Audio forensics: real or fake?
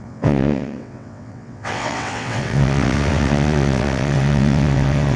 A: fake